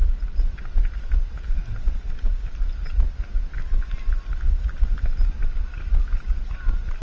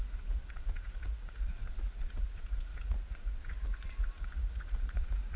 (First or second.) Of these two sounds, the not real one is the second